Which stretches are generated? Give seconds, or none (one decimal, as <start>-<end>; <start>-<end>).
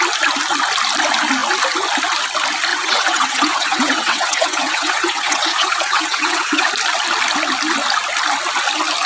2.7-6.7